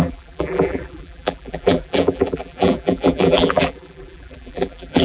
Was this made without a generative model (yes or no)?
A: no